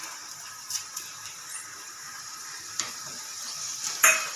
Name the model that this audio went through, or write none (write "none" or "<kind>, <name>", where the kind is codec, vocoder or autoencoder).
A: vocoder, BigVGAN v2